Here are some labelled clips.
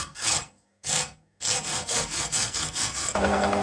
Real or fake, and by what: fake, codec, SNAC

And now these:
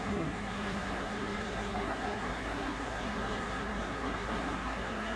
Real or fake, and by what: fake, codec, SNAC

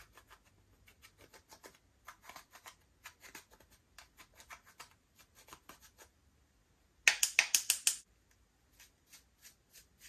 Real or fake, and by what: real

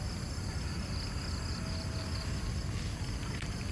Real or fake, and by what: real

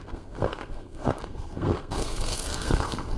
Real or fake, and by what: fake, codec, SNAC